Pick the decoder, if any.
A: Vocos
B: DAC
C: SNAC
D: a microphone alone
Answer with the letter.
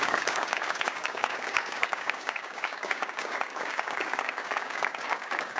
B